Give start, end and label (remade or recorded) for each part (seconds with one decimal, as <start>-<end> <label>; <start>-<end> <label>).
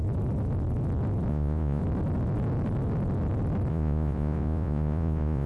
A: 0.0-1.3 recorded; 1.3-1.8 remade; 1.8-3.7 recorded; 3.7-5.5 remade